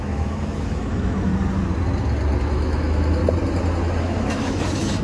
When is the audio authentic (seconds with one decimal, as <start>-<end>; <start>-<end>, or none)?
1.3-2.4; 3.2-4.0